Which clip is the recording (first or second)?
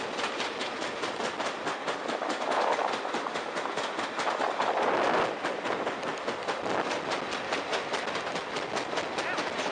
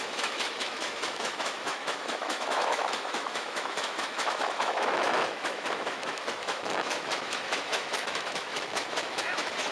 first